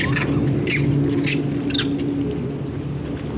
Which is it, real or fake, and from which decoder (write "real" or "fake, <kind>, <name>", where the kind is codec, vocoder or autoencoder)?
real